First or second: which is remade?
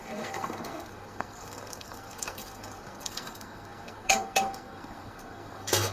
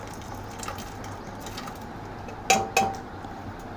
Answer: first